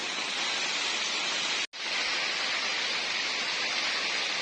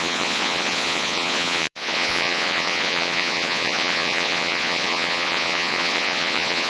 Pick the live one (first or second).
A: first